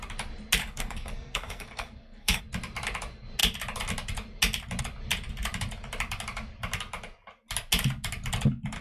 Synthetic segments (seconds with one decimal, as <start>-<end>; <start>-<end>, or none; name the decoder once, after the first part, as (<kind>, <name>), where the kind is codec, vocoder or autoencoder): 0.6-2.4 (codec, SNAC)